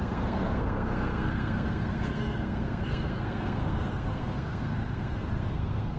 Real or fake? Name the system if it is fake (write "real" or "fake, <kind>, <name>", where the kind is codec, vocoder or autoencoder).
fake, codec, SNAC